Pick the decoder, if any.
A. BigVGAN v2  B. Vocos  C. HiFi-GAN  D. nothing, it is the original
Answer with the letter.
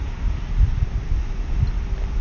D